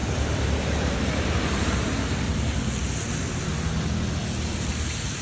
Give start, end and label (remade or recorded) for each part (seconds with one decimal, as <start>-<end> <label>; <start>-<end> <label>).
0.0-1.4 remade; 1.4-5.2 recorded